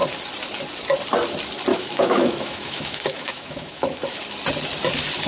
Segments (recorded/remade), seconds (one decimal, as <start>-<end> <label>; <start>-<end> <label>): 0.0-1.7 recorded; 1.7-4.0 remade; 4.0-5.3 recorded